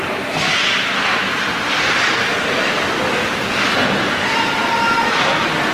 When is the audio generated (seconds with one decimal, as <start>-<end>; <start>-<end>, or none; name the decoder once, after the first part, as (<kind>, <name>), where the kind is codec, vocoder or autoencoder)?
none